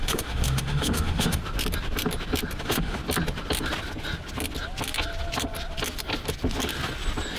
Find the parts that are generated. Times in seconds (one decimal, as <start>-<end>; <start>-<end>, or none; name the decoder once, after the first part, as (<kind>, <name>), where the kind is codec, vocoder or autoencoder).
0.0-1.4 (autoencoder, DAC-VAE); 2.6-3.0